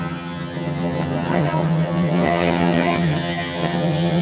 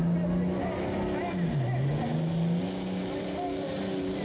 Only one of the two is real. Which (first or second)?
second